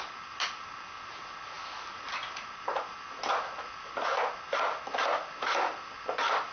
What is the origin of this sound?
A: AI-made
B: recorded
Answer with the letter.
B